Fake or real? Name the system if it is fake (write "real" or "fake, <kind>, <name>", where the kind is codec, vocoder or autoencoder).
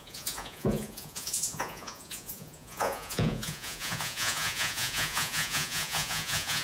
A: fake, vocoder, Vocos